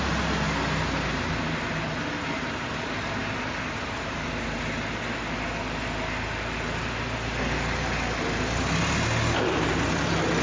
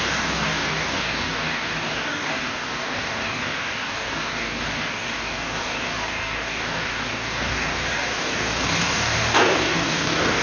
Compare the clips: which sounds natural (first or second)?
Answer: first